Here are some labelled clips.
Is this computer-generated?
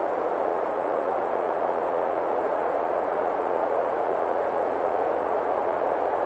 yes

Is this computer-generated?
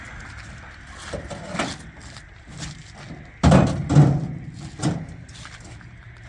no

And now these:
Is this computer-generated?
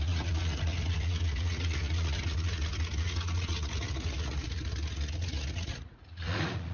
yes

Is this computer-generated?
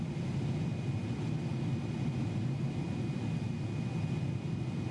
no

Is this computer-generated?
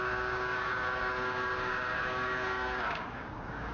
yes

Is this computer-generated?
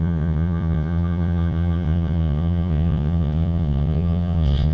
yes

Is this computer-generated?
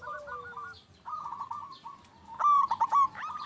no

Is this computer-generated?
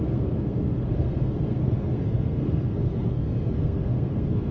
yes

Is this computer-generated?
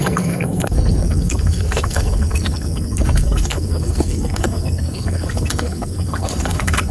yes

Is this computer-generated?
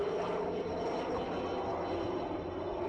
no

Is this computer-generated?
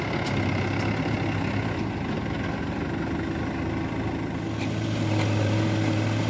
no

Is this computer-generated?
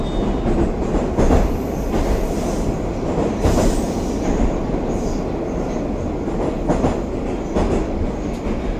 no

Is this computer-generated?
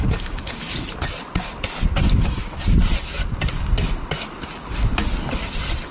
no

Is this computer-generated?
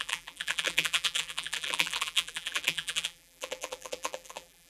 yes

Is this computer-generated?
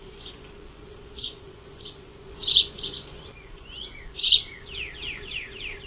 yes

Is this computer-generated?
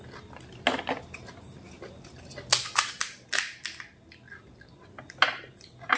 no